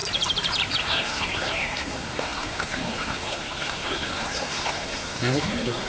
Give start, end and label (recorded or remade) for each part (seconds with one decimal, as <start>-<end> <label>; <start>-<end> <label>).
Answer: 0.0-0.8 recorded; 0.8-5.9 remade